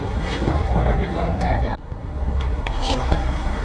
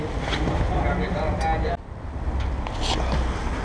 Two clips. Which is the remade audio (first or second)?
first